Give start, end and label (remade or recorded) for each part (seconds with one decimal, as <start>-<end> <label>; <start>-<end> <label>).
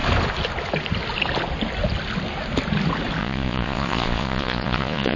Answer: 0.0-3.2 recorded; 3.2-5.2 remade